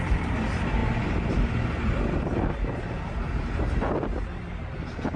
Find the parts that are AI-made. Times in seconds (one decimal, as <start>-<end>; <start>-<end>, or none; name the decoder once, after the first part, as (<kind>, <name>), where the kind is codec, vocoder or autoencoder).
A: none